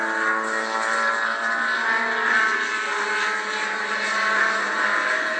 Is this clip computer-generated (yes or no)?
no